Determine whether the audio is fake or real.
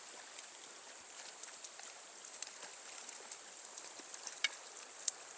real